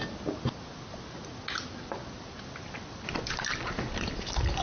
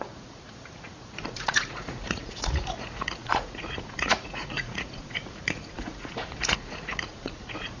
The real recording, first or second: first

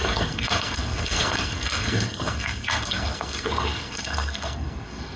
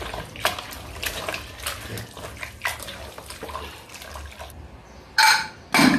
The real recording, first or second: second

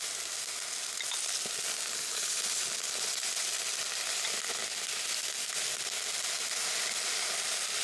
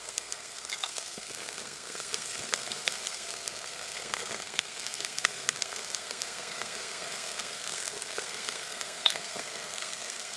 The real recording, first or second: first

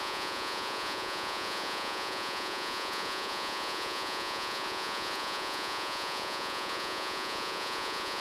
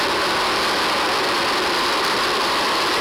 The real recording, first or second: second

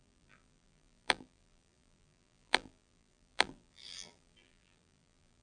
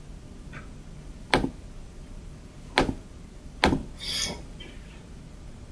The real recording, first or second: second